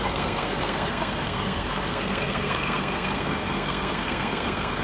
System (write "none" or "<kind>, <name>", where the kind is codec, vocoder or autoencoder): codec, SNAC